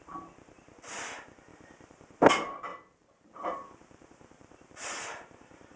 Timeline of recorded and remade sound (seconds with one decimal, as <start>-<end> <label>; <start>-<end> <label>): 0.0-1.5 recorded; 1.5-2.3 remade; 2.3-2.7 recorded; 2.7-5.8 remade